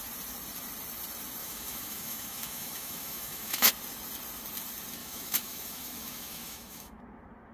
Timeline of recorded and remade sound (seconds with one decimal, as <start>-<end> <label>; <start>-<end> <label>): 0.0-1.4 recorded; 1.4-3.7 remade; 3.7-5.0 recorded; 5.0-7.0 remade; 7.0-7.5 recorded